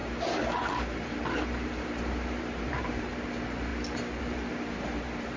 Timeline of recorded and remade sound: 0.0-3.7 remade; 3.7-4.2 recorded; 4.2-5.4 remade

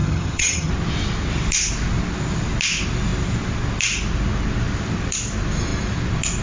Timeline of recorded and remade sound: 0.0-0.7 remade; 0.7-6.4 recorded

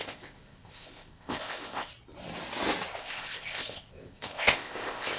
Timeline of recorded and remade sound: 0.0-1.9 remade; 1.9-3.0 recorded; 3.0-5.2 remade

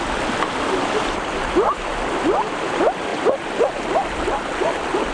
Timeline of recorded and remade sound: 0.0-3.1 recorded; 3.1-4.6 remade; 4.6-5.1 recorded

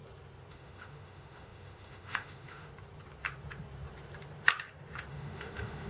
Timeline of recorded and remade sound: 0.0-0.5 recorded; 0.5-2.7 remade; 2.7-5.1 recorded; 5.1-5.9 remade